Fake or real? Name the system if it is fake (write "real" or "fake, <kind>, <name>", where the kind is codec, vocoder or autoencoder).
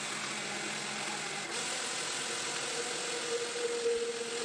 real